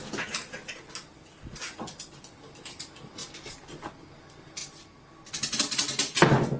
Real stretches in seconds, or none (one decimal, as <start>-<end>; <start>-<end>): 0.0-3.2; 3.9-6.6